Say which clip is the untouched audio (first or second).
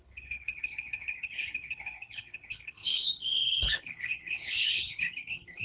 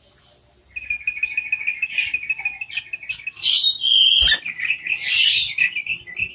second